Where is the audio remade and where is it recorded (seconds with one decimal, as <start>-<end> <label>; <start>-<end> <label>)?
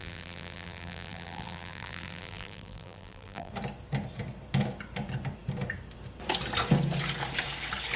0.0-3.5 remade; 3.5-8.0 recorded